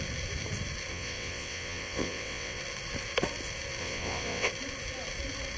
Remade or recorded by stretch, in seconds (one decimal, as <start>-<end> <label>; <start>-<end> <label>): 0.0-0.9 recorded; 0.9-2.6 remade; 2.6-3.8 recorded; 3.8-4.5 remade; 4.5-5.6 recorded